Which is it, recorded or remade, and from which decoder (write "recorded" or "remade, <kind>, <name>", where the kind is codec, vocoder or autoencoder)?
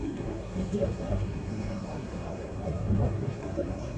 remade, codec, SNAC